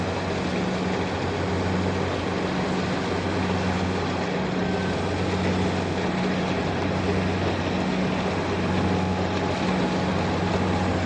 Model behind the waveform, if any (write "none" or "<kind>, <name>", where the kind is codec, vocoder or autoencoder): none